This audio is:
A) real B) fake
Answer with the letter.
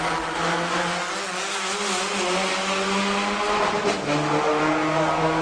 A